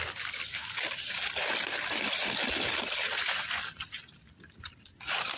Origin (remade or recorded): recorded